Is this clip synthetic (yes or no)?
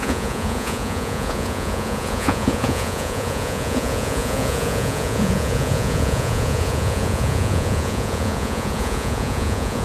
yes